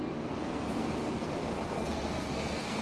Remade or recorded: remade